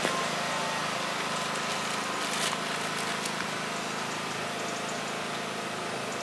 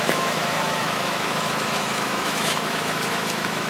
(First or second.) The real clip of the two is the first